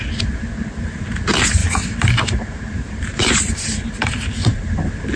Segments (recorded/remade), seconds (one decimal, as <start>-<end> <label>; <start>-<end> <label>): 0.0-1.6 recorded; 1.6-4.7 remade; 4.7-5.2 recorded